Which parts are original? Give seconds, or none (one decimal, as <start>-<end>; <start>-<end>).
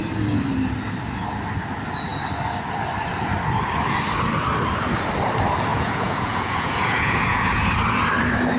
0.0-5.7; 7.7-8.6